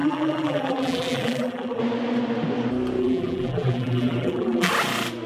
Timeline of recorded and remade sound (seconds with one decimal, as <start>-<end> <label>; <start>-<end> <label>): 0.0-1.8 remade; 1.8-3.0 recorded; 3.0-4.7 remade; 4.7-5.3 recorded